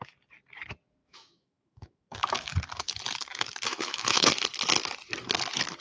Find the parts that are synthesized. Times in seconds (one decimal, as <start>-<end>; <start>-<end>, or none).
1.0-2.5; 3.7-4.3